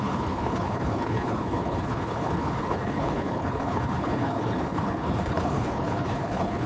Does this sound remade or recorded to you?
remade